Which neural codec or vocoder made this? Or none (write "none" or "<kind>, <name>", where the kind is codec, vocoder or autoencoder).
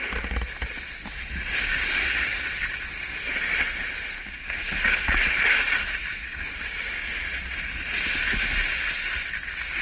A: none